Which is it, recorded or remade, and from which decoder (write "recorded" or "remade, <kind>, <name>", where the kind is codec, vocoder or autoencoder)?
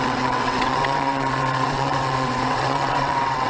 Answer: remade, vocoder, WaveNeXt